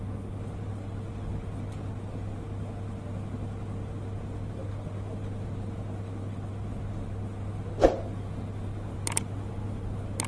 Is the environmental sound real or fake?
real